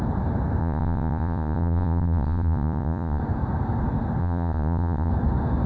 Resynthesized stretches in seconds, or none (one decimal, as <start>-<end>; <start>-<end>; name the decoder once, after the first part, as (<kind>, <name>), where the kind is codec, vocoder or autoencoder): 0.6-3.2 (vocoder, Vocos); 4.2-5.1

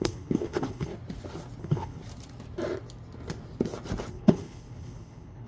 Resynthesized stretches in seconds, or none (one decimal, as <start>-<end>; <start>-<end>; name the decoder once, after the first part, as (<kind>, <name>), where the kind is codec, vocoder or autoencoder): 0.0-0.9 (codec, HILCodec); 1.6-2.0; 4.1-5.5

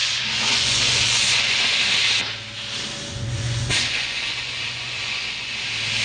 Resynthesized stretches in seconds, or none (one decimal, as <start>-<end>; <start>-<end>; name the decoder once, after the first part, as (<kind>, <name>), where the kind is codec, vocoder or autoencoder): 0.0-1.8 (vocoder, Vocos); 3.1-5.6

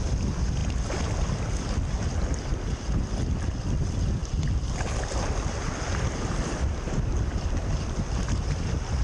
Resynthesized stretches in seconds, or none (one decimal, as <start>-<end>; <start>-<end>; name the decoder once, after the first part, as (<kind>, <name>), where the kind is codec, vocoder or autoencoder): 0.6-1.2 (vocoder, BigVGAN v2)

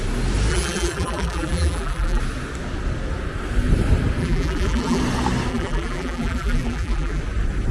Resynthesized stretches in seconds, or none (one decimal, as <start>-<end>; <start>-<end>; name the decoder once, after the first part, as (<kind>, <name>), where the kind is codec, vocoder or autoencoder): 0.5-2.2 (vocoder, BigVGAN v2); 4.2-5.0; 5.5-7.2

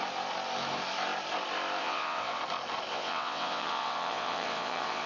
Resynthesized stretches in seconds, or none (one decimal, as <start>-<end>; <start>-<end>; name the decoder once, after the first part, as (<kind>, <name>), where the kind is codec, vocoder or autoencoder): 1.8-2.4 (vocoder, WaveNeXt); 2.9-5.1

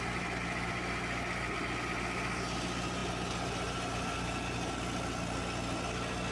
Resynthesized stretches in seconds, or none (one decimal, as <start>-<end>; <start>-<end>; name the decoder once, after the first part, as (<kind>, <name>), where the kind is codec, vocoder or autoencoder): none